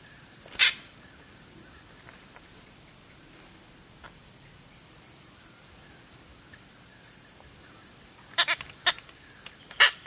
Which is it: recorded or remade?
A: remade